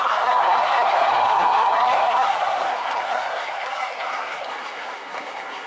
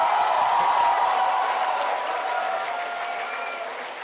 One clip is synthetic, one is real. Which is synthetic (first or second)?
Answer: first